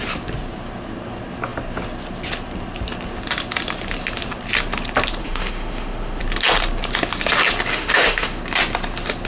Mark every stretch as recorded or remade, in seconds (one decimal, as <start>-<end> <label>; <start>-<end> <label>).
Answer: 0.0-5.2 recorded; 5.2-6.2 remade; 6.2-7.7 recorded; 7.7-8.4 remade; 8.4-9.3 recorded